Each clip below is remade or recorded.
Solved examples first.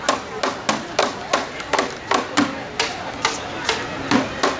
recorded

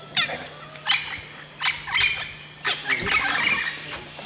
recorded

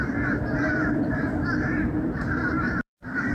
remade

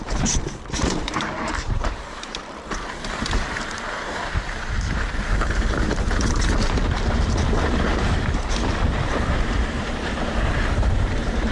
remade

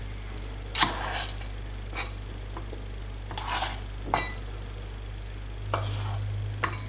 recorded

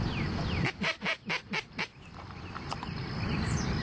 remade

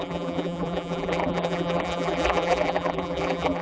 remade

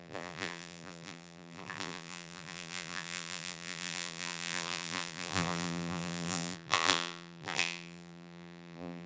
remade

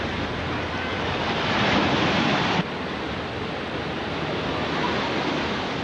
recorded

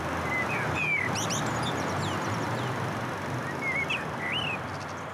recorded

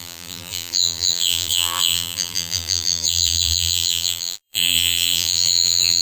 remade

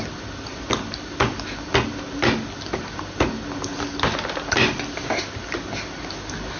recorded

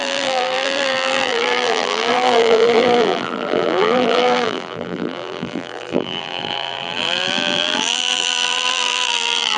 remade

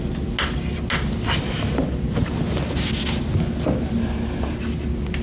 recorded